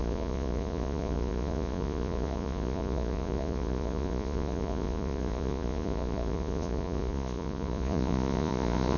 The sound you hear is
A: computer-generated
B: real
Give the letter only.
A